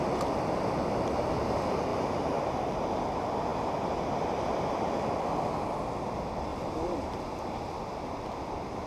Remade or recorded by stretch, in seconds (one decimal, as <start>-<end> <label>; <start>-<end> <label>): 0.0-1.9 recorded; 1.9-2.8 remade; 2.8-6.5 recorded; 6.5-7.2 remade; 7.2-8.9 recorded